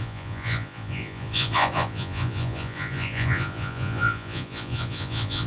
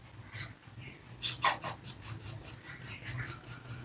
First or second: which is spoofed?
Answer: first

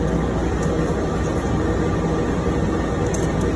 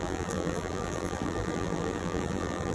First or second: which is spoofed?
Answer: second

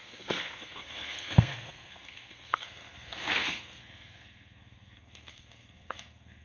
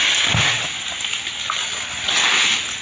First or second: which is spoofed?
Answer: first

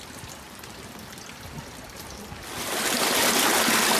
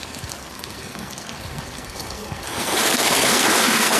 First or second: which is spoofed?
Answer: second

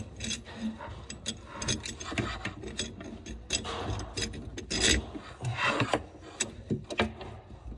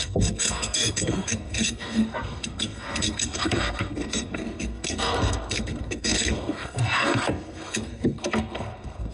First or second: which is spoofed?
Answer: second